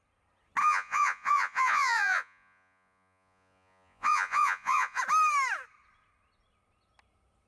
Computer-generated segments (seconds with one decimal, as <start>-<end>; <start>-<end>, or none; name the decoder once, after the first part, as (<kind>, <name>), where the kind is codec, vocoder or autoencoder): 0.6-5.0 (vocoder, Vocos)